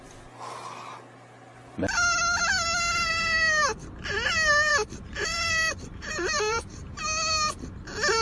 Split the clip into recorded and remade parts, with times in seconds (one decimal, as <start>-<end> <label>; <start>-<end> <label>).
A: 0.0-4.7 recorded; 4.7-7.0 remade; 7.0-8.2 recorded